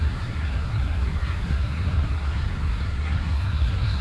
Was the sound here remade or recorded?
remade